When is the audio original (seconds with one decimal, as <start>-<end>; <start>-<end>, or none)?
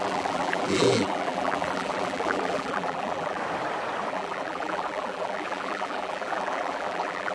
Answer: 3.4-4.1